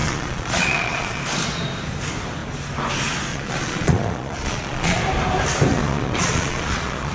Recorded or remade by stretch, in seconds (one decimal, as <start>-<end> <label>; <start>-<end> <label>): 0.0-1.2 remade; 1.2-3.3 recorded; 3.3-5.0 remade; 5.0-5.7 recorded; 5.7-7.1 remade